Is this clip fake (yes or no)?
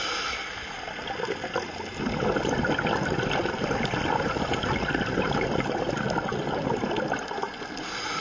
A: no